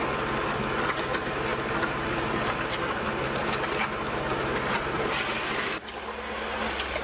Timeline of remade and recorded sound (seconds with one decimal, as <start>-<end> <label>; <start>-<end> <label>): 0.0-7.0 recorded